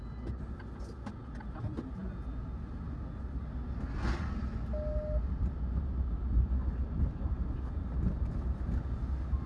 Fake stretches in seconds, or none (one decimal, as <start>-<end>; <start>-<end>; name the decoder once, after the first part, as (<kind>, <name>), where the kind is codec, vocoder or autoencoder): none